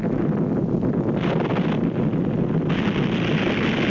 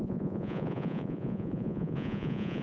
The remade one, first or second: second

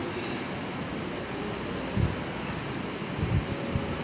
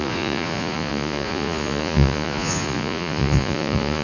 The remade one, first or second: second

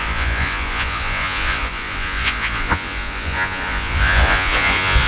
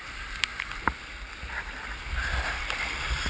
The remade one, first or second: first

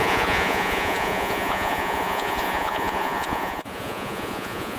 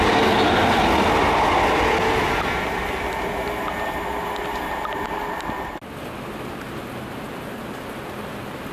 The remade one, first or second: first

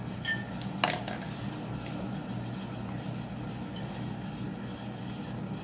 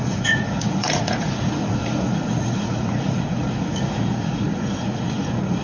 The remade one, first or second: second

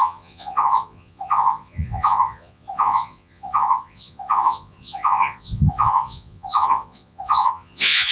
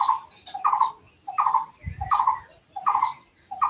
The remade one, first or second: first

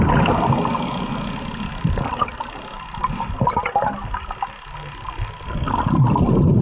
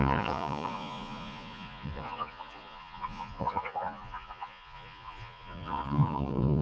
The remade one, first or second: second